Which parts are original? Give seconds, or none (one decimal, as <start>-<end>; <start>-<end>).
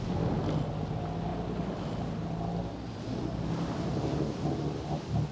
0.0-5.3